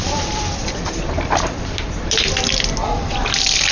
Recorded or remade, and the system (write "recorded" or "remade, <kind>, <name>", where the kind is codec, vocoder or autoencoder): remade, vocoder, BigVGAN v2